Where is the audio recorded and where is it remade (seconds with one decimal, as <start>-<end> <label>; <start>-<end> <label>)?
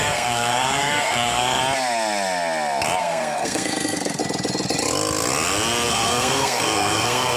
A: 0.0-1.6 remade; 1.6-3.0 recorded; 3.0-4.2 remade; 4.2-5.9 recorded; 5.9-7.4 remade